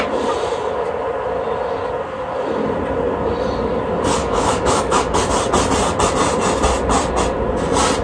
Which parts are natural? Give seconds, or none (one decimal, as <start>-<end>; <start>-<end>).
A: 0.0-4.2; 5.2-8.0